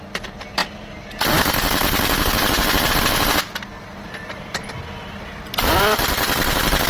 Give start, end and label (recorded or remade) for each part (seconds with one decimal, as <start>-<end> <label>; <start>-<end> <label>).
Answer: 0.0-6.9 recorded